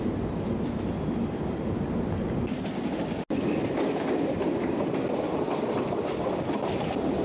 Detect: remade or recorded recorded